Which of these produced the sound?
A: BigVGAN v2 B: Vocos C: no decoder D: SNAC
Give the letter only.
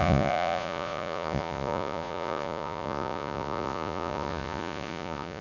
B